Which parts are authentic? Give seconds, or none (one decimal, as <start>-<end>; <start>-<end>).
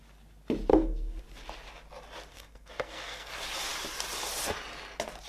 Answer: 0.0-0.7; 1.2-2.3; 3.3-5.3